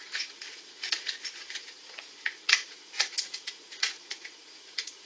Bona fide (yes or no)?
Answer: no